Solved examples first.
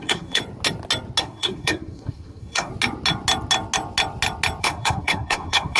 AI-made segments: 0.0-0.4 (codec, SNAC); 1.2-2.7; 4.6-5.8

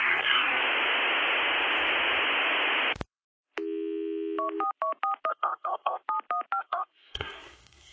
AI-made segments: 0.0-0.6 (codec, SNAC); 5.3-6.0; 6.6-7.9

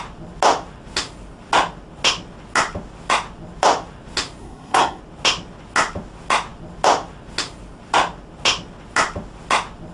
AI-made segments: 4.4-5.0 (codec, SNAC)

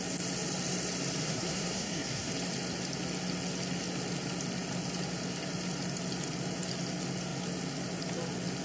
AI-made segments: 1.2-2.3 (codec, SNAC)

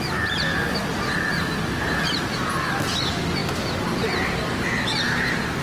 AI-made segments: none

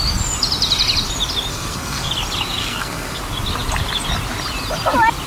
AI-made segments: 1.5-2.1 (codec, SNAC); 2.6-3.2